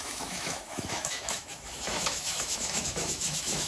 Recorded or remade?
remade